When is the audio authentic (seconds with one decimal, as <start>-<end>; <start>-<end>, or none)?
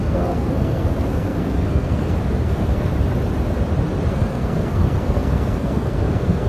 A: 2.9-4.1